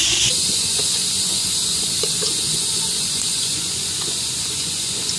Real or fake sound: fake